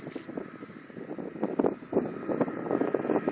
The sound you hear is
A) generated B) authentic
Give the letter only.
B